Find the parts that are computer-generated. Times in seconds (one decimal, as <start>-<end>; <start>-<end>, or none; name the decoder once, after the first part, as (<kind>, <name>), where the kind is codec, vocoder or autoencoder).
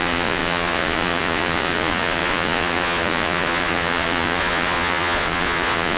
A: 0.0-6.0 (vocoder, Vocos)